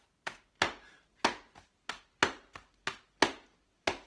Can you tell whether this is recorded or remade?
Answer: recorded